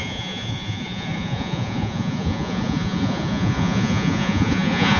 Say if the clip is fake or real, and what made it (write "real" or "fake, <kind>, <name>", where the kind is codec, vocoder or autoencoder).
fake, vocoder, Vocos